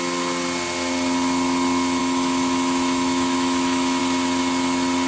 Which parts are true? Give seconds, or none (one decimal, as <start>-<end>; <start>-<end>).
0.0-2.0; 4.0-5.1